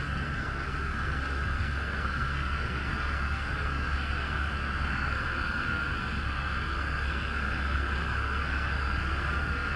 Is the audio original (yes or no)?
no